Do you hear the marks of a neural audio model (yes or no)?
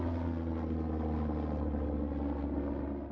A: no